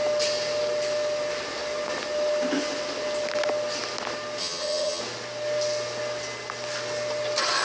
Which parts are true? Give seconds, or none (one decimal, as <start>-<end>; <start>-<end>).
0.0-4.4; 5.0-7.6